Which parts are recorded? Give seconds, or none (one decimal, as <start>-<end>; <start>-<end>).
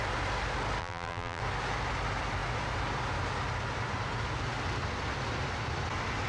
0.0-0.8; 1.4-6.3